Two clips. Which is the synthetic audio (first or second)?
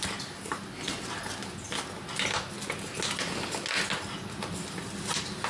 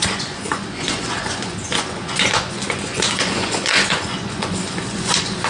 second